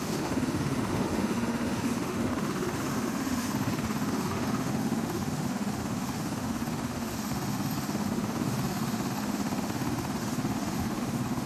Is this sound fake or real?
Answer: fake